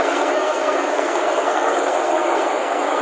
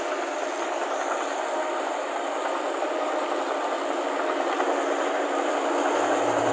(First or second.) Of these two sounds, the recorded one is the second